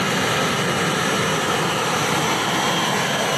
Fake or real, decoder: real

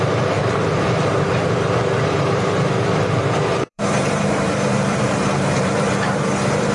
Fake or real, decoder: fake, vocoder, BigVGAN v2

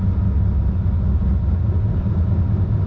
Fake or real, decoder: real